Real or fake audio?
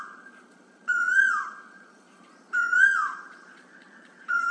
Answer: fake